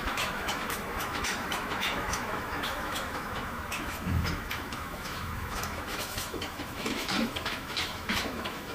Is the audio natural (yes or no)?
no